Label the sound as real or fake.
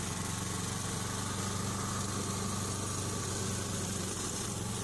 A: real